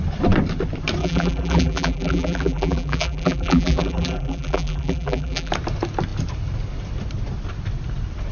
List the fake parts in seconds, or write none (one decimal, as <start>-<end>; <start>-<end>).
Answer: 1.0-5.5

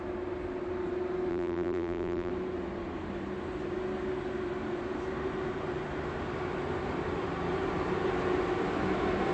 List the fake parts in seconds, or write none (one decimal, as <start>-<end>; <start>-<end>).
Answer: 1.3-2.3